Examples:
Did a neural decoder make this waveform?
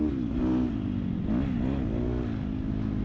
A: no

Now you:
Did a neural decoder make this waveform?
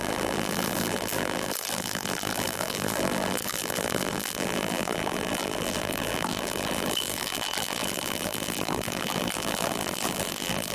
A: yes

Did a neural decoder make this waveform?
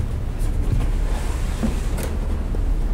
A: no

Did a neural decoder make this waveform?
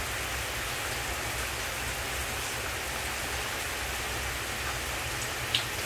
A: no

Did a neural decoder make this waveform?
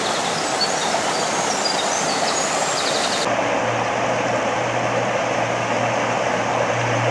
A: no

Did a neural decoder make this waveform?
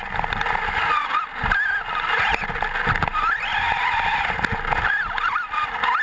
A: no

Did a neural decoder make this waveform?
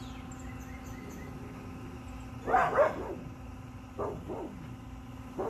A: no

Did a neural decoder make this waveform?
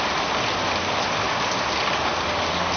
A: no